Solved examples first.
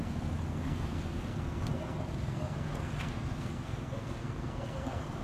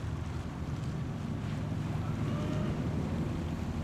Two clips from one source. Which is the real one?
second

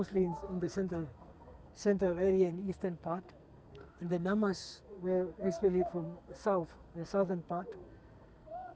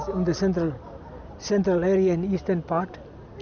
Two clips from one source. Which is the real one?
second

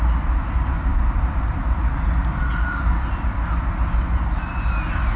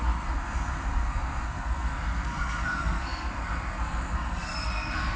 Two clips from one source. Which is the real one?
first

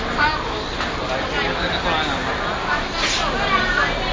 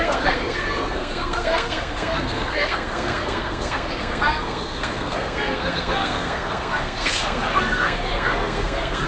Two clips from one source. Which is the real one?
first